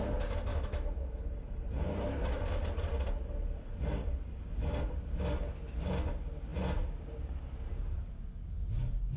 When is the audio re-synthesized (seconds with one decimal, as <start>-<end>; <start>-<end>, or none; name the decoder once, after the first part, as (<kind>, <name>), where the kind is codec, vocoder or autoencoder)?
0.5-1.2 (autoencoder, DAC-VAE)

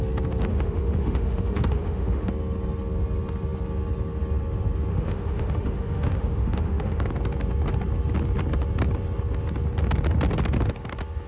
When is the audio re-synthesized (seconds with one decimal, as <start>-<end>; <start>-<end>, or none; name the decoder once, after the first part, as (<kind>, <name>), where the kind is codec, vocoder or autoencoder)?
0.5-2.3 (autoencoder, DAC-VAE); 4.9-7.1

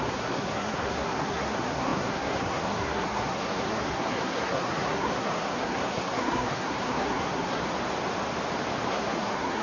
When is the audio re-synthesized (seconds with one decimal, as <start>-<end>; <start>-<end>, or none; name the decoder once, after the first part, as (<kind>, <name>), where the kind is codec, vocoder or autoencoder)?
0.0-7.6 (codec, SNAC); 8.9-9.6

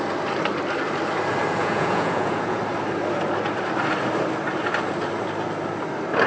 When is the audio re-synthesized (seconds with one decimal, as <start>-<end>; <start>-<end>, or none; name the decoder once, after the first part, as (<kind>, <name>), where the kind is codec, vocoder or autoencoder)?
1.6-2.6 (vocoder, Vocos)

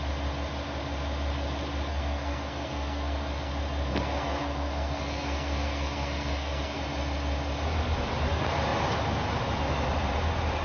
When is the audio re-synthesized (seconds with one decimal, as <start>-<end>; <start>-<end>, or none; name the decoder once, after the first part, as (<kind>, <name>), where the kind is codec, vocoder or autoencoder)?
1.9-3.5 (codec, SNAC); 3.9-6.8

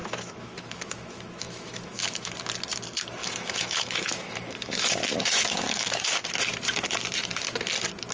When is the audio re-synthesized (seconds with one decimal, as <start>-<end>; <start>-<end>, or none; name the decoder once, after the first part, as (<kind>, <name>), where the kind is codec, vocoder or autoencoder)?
0.0-2.3 (autoencoder, DAC-VAE); 3.2-6.0

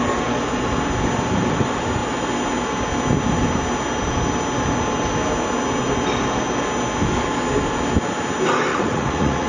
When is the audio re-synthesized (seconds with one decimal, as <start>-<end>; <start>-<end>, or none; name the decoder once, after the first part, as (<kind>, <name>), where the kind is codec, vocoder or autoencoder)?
8.7-9.5 (vocoder, Vocos)

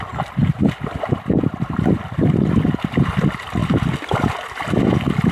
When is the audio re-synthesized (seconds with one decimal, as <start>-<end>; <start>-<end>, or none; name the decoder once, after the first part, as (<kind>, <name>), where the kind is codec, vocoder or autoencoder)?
none